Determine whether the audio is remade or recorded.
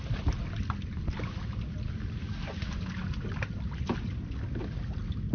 recorded